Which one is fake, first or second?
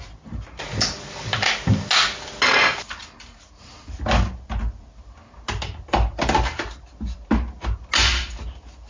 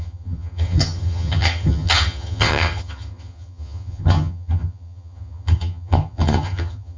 second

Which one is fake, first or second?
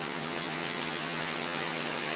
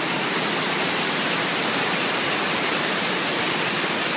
first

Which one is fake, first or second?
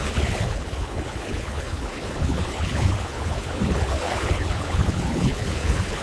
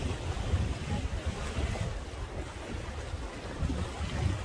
first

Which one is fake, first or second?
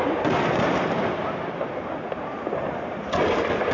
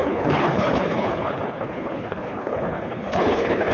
second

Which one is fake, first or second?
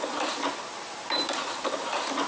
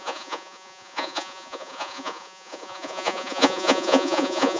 second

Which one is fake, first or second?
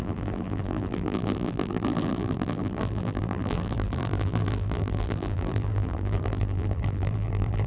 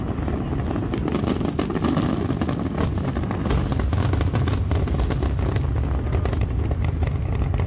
first